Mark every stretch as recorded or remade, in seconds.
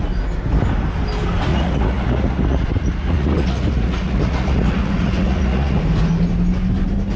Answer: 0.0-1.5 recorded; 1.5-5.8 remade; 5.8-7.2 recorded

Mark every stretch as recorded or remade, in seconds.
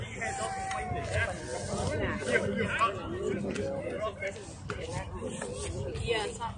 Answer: 0.0-6.6 recorded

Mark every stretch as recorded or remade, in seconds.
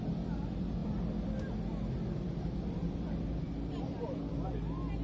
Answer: 0.0-0.8 recorded; 0.8-3.8 remade; 3.8-5.0 recorded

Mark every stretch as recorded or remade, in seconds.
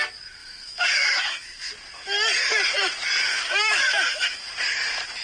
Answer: 0.0-0.4 recorded; 0.4-1.7 remade; 1.7-3.3 recorded; 3.3-4.5 remade; 4.5-5.2 recorded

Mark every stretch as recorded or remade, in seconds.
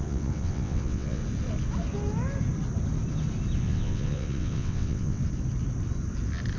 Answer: 0.0-1.2 remade; 1.2-3.6 recorded; 3.6-5.2 remade; 5.2-6.6 recorded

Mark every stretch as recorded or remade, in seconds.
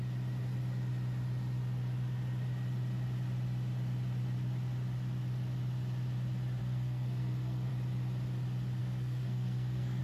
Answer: 0.0-6.6 recorded; 6.6-7.7 remade; 7.7-8.8 recorded; 8.8-10.0 remade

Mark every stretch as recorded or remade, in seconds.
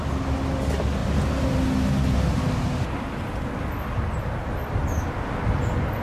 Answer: 0.0-6.0 recorded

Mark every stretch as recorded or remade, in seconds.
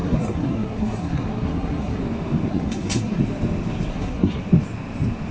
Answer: 0.0-2.0 remade; 2.0-2.5 recorded; 2.5-3.2 remade; 3.2-3.9 recorded; 3.9-4.4 remade; 4.4-5.3 recorded